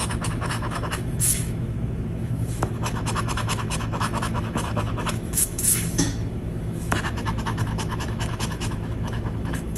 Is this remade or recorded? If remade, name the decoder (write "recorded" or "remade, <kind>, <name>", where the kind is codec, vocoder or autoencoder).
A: remade, autoencoder, DAC-VAE